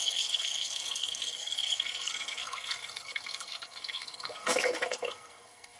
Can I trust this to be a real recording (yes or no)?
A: no